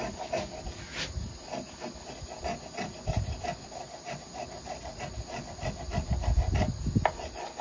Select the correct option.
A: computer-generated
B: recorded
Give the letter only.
B